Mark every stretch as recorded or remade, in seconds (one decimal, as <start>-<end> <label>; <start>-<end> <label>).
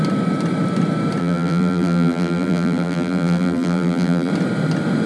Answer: 0.0-1.2 recorded; 1.2-4.3 remade; 4.3-5.1 recorded